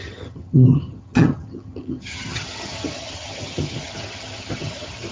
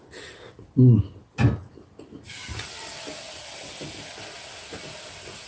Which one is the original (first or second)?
second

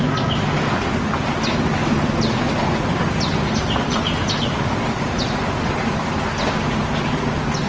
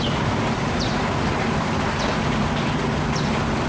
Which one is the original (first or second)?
first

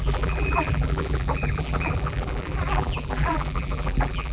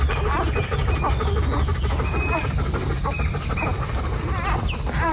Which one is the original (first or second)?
second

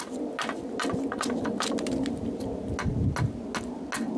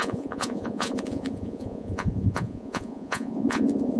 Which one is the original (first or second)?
first